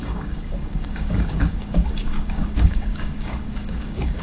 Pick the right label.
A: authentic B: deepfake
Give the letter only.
B